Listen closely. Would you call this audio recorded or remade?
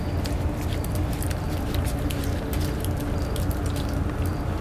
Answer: recorded